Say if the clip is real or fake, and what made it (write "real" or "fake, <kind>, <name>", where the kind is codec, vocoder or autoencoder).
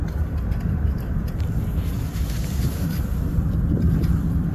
real